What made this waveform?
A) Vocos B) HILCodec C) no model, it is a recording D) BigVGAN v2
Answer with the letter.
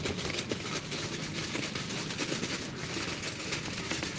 C